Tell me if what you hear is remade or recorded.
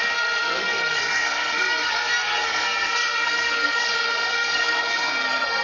remade